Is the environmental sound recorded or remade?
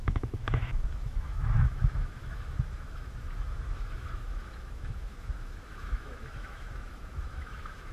remade